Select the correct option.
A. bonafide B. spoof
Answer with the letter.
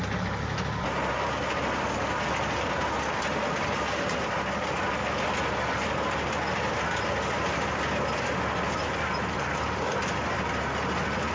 A